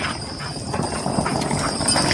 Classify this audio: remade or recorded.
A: recorded